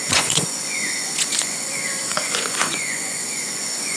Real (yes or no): no